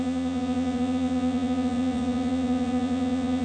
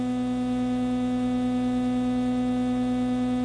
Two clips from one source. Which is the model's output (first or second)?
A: first